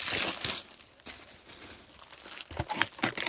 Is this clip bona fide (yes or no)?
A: yes